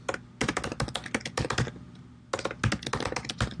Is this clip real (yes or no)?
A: yes